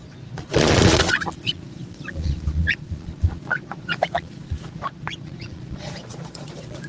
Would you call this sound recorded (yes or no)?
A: no